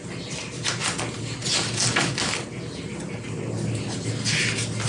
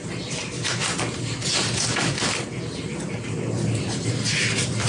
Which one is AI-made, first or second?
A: second